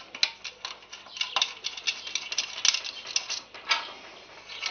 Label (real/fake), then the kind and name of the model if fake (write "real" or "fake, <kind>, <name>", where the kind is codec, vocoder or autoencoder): real